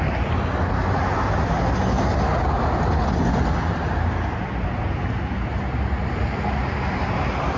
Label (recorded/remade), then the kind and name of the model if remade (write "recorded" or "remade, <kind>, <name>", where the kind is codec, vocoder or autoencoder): recorded